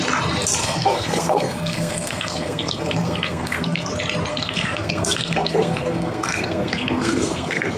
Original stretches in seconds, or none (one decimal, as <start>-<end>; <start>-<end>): 0.0-0.6; 3.9-4.3